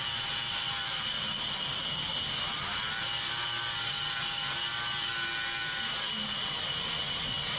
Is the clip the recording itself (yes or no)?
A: yes